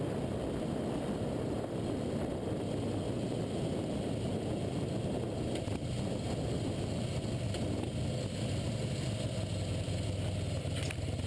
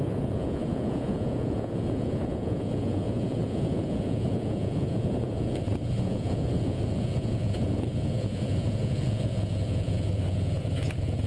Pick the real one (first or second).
first